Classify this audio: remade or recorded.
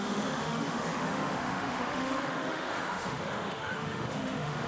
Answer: remade